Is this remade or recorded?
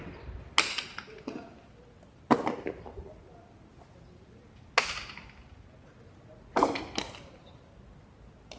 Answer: recorded